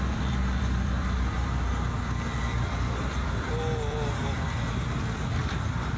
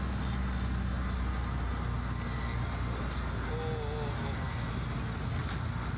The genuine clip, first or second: second